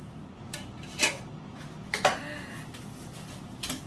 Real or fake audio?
real